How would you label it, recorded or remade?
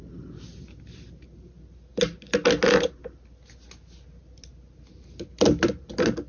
recorded